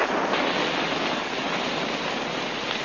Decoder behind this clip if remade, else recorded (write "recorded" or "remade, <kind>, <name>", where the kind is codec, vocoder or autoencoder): recorded